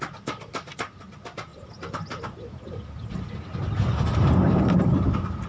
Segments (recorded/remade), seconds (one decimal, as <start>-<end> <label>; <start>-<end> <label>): 0.0-1.5 recorded; 1.5-4.8 remade; 4.8-5.5 recorded